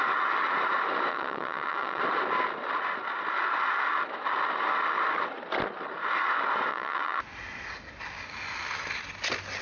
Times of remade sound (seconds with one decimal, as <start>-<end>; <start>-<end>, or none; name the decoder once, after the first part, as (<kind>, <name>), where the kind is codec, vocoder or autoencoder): 1.1-2.0 (vocoder, WaveNeXt); 6.7-7.2